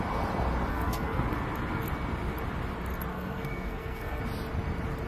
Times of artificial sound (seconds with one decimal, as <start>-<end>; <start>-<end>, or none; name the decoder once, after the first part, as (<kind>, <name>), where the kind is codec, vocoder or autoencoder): 0.7-1.2 (codec, SNAC); 3.1-4.2